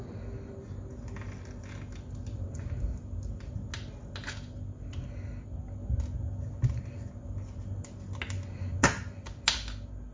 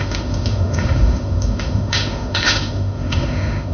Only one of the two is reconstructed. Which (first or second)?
second